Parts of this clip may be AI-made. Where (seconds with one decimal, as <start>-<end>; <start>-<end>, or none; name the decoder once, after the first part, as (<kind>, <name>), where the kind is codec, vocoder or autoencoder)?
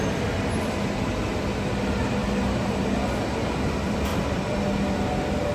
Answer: 2.2-2.8 (vocoder, BigVGAN v2); 4.1-4.6